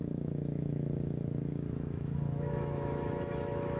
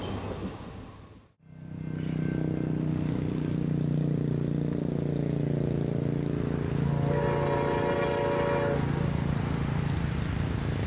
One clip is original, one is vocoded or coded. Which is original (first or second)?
second